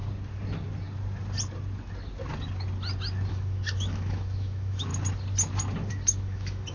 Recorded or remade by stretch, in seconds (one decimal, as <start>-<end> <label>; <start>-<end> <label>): 0.0-3.3 recorded; 3.3-4.9 remade; 4.9-5.9 recorded; 5.9-6.7 remade